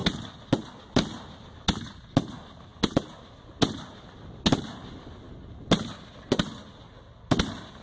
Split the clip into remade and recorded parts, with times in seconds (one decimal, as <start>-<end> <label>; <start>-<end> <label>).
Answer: 0.0-7.8 recorded